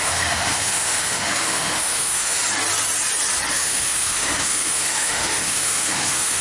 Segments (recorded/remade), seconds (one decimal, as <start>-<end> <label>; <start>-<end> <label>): 0.0-2.4 remade; 2.4-3.5 recorded; 3.5-6.4 remade